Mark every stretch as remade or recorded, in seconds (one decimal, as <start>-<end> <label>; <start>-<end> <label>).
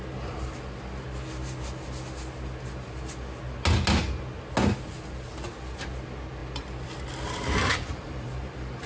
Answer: 0.0-6.4 recorded; 6.4-8.9 remade